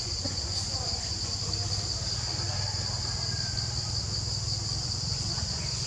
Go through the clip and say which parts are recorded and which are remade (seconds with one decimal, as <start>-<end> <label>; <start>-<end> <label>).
0.0-1.4 remade; 1.4-4.8 recorded; 4.8-5.9 remade